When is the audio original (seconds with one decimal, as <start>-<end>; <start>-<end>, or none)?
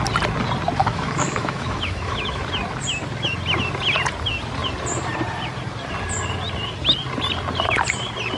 0.0-0.8; 2.4-8.4